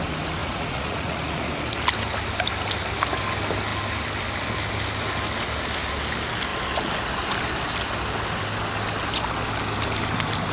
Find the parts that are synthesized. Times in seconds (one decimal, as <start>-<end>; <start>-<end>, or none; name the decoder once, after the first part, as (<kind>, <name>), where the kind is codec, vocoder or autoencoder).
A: 0.4-1.5 (vocoder, Vocos)